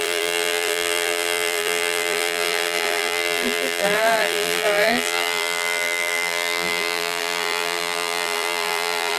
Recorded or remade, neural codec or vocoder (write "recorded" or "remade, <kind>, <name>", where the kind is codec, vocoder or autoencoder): remade, vocoder, BigVGAN v2